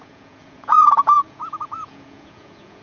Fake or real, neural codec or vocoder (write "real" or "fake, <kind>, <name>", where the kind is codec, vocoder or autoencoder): fake, vocoder, Vocos